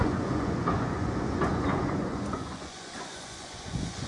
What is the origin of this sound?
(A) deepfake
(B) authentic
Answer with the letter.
A